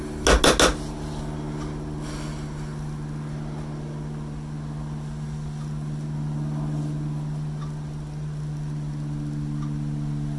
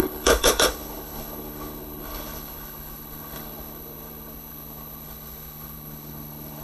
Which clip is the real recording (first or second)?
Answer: first